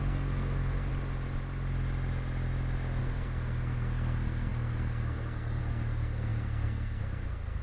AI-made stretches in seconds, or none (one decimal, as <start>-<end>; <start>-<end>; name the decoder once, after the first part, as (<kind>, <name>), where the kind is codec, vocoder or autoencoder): 0.0-0.9 (codec, SNAC); 3.0-7.6